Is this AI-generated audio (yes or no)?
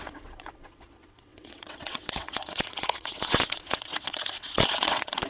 yes